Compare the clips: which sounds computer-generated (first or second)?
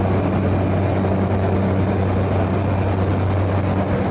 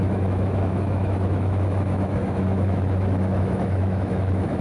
second